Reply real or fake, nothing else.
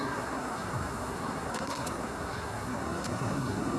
fake